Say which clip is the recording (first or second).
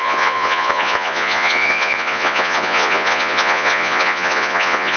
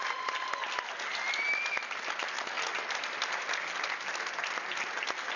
second